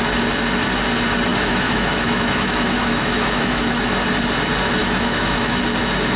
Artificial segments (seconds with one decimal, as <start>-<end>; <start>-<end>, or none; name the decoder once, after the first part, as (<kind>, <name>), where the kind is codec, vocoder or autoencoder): 1.3-3.9 (autoencoder, DAC-VAE); 4.8-5.6